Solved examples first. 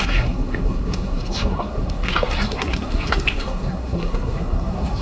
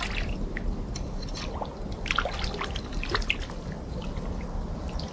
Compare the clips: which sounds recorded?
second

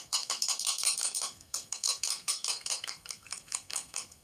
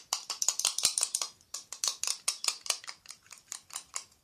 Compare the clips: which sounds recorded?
second